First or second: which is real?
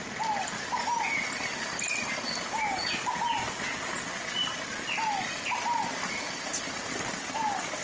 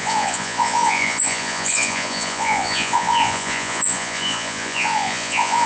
first